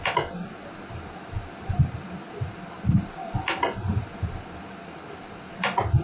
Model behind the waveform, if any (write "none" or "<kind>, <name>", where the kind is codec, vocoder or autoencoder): none